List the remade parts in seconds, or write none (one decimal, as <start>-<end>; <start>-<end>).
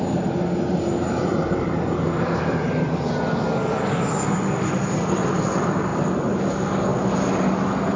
0.7-2.7; 5.9-6.4